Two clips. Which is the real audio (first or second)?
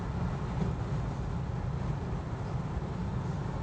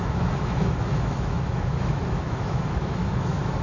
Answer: first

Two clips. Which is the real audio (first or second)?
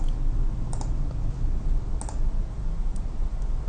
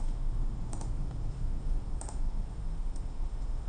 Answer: first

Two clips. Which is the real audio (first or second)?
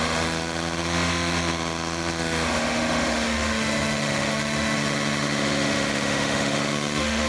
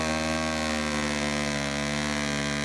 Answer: second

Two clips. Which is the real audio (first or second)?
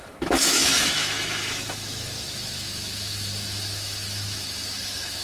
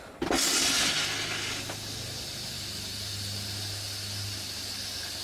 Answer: second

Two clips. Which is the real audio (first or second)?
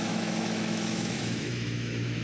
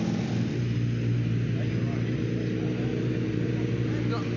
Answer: second